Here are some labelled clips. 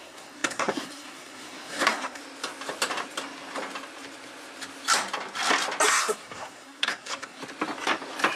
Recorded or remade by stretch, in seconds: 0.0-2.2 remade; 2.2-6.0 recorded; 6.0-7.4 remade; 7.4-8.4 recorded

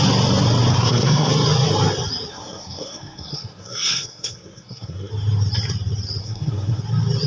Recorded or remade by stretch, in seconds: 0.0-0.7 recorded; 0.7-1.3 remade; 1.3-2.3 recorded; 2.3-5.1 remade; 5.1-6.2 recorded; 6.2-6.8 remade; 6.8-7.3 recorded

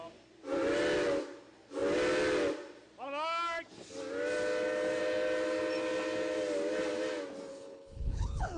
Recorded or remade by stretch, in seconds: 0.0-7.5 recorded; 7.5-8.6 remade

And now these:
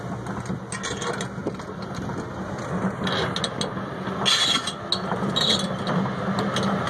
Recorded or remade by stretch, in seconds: 0.0-6.9 recorded